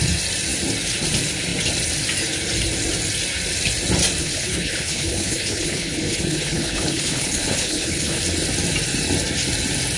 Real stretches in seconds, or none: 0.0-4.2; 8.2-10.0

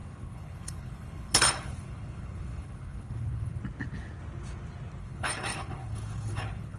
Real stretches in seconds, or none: 3.6-5.0

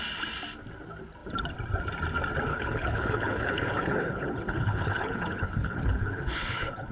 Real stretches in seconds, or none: 0.0-2.5

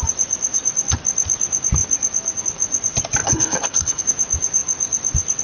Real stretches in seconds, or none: 0.0-3.2; 4.0-5.4

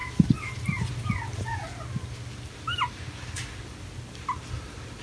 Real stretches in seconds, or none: 0.0-5.0